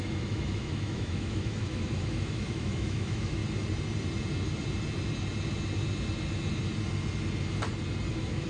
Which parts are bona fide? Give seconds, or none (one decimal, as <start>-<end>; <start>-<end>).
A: 3.4-8.1